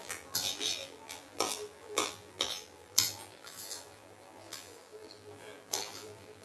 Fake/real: fake